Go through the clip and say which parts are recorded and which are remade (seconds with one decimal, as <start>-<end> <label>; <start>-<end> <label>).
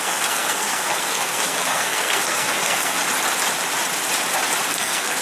0.0-3.0 remade; 3.0-4.7 recorded; 4.7-5.2 remade